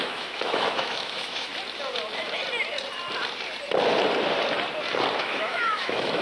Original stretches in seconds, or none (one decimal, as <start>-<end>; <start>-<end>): 1.5-5.2